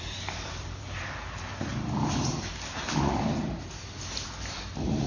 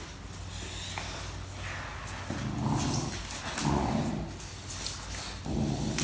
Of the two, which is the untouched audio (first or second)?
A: second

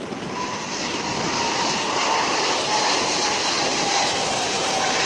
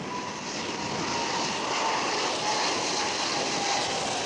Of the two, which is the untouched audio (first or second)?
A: second